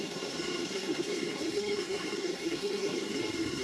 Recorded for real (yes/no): no